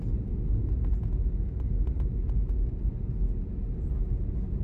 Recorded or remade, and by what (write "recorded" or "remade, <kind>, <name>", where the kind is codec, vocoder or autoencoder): recorded